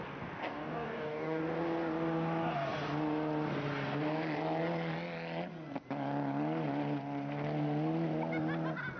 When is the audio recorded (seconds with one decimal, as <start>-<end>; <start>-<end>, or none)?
0.0-0.4; 1.4-9.0